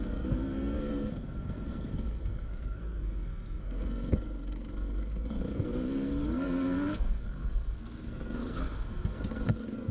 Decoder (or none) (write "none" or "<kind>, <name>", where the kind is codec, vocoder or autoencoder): codec, SNAC